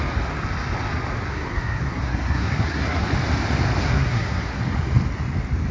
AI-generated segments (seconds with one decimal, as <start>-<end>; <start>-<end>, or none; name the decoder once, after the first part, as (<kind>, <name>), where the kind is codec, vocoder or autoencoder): 1.3-3.1 (codec, SNAC); 3.8-4.6